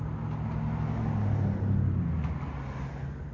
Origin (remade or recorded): recorded